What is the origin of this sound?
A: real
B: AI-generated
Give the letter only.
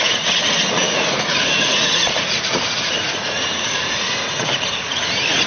B